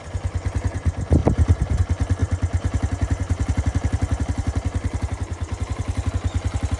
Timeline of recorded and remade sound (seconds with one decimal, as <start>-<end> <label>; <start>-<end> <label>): 0.0-1.2 recorded; 1.2-1.8 remade; 1.8-2.2 recorded; 2.2-6.1 remade; 6.1-6.8 recorded